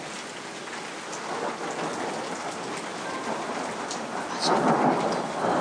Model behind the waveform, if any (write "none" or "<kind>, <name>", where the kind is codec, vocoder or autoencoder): none